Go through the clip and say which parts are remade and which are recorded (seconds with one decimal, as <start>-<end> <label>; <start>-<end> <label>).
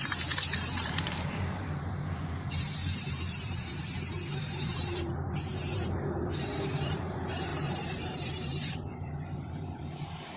0.0-10.4 remade